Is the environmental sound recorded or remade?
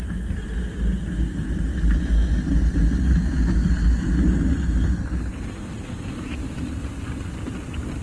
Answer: recorded